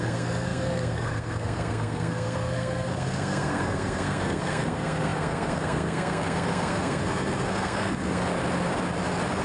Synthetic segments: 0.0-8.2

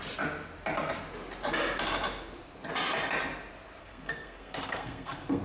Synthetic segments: 3.8-5.4

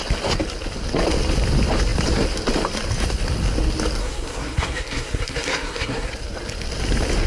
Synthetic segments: 4.0-6.1

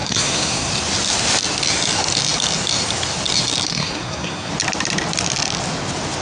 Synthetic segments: 0.0-0.7; 3.7-4.5

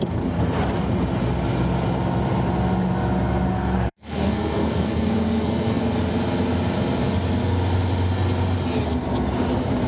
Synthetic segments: 3.5-5.8

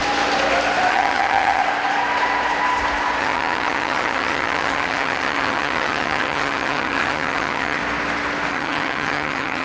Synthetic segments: 0.9-1.6; 3.2-7.8; 8.5-9.6

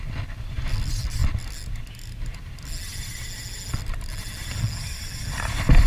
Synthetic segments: none

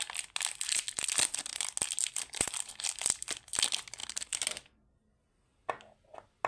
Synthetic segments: none